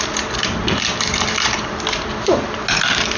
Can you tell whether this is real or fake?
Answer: real